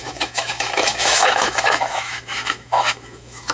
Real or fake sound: fake